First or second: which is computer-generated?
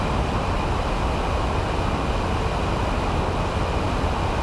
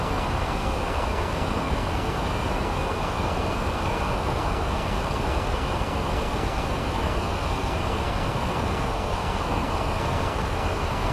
second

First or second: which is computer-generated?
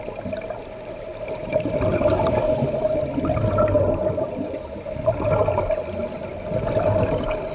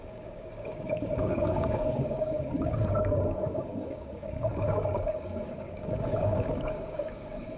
second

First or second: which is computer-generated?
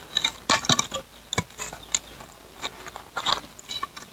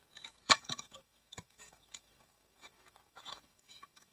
second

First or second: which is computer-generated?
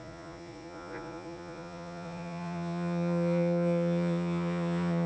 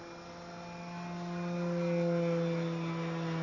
first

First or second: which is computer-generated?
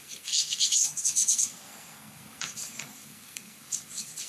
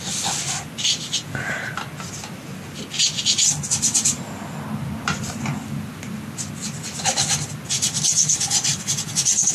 first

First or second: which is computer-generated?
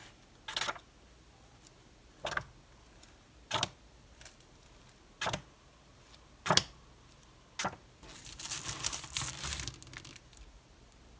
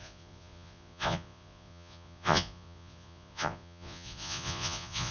second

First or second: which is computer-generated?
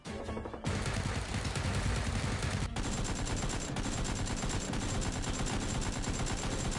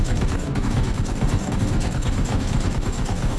second